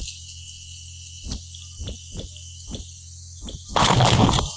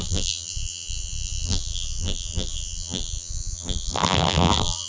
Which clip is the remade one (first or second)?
second